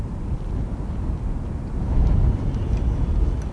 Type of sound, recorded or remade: recorded